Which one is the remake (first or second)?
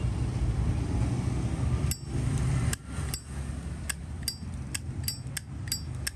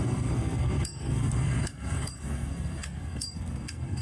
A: second